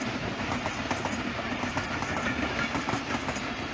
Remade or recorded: recorded